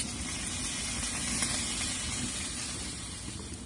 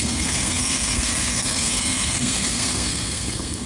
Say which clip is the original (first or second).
first